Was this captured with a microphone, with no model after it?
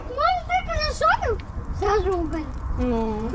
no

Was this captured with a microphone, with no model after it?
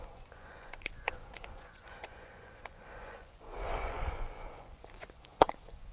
no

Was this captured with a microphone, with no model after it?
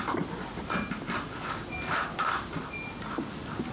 yes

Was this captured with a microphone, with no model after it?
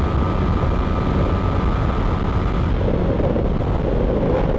yes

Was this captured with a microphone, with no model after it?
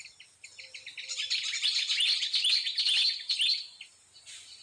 yes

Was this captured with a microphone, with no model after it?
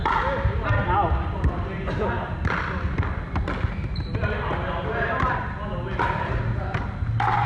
yes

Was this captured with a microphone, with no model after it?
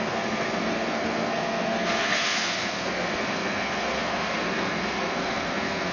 no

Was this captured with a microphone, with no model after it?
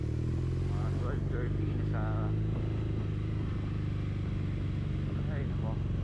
yes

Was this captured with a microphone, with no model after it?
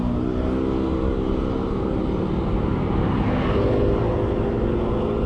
yes